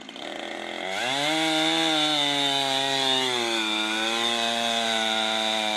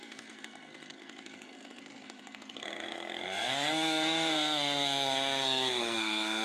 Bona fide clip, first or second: first